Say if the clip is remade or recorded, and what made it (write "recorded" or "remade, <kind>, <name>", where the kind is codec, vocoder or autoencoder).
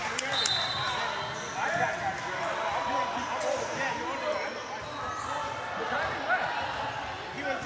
recorded